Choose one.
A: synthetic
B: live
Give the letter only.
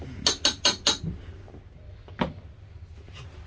B